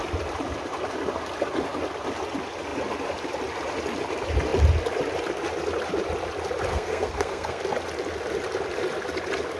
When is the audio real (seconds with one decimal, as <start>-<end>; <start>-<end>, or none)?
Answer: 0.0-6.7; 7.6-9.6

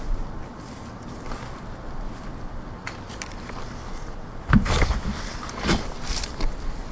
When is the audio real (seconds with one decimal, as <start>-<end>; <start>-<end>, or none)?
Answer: 0.0-6.9

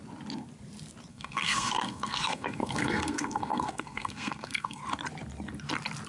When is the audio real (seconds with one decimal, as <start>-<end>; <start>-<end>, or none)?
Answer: 0.0-1.1; 4.8-6.1

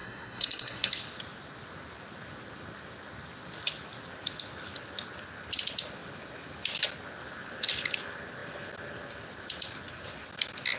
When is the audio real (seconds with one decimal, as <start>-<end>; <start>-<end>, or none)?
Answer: 0.9-10.8